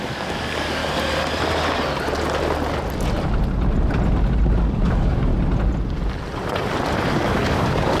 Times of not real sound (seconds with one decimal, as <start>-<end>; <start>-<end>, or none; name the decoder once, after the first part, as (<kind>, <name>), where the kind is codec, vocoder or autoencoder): 0.0-0.8 (codec, DAC); 4.6-5.3; 7.1-8.0